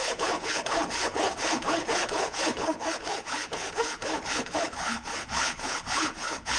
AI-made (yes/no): yes